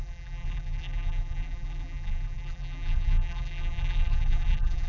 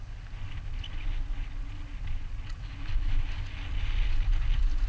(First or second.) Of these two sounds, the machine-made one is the first